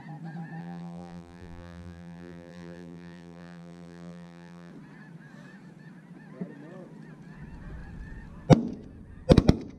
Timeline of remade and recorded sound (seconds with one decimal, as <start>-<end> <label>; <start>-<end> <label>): 0.0-0.6 recorded; 0.6-4.7 remade; 4.7-9.8 recorded